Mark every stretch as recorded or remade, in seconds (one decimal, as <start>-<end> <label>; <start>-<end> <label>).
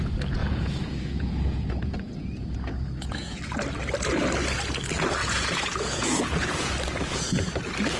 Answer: 0.0-0.4 recorded; 0.4-3.4 remade; 3.4-5.2 recorded; 5.2-6.7 remade; 6.7-8.0 recorded